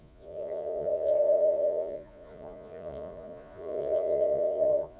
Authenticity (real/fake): fake